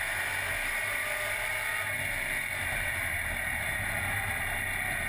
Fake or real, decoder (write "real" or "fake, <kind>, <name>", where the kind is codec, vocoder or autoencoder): fake, vocoder, BigVGAN v2